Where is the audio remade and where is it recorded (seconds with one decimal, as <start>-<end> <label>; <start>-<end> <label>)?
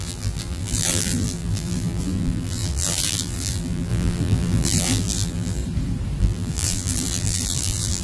0.0-5.6 remade; 5.6-6.2 recorded; 6.2-8.0 remade